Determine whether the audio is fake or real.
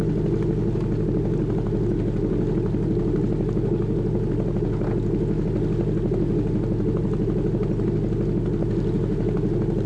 real